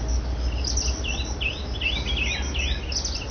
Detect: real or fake real